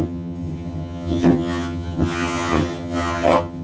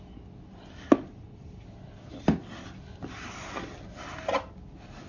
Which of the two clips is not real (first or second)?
first